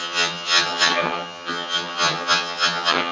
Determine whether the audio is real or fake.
fake